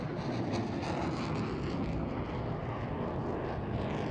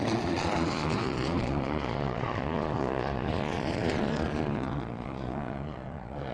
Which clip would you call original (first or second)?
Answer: first